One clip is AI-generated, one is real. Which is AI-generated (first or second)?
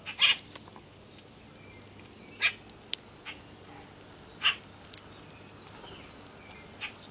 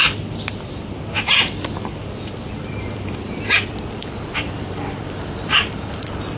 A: second